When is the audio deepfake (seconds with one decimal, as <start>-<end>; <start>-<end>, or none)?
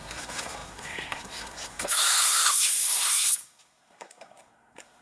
0.0-5.0